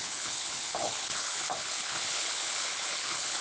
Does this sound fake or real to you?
fake